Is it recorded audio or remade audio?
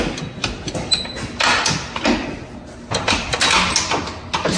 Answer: recorded